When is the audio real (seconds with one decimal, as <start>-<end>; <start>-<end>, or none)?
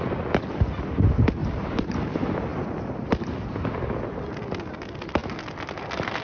0.0-1.4; 2.1-6.2